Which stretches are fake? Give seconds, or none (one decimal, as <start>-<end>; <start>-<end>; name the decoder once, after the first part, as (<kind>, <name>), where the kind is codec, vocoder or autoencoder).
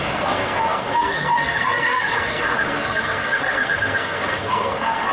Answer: 0.0-5.1 (codec, SNAC)